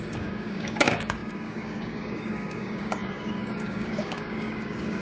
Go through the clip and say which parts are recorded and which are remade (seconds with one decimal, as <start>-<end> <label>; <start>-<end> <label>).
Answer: 0.0-5.0 remade